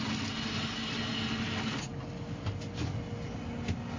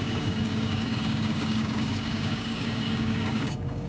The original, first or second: first